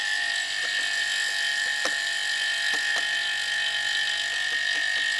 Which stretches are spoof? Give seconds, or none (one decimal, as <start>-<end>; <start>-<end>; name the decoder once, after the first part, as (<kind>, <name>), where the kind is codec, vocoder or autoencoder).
none